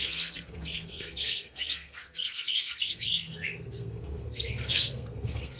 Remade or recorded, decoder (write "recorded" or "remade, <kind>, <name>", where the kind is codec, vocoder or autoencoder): remade, codec, SNAC